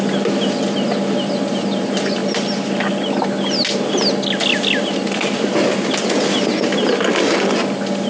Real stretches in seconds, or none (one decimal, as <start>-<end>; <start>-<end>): 0.0-8.1